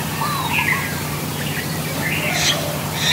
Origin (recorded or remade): remade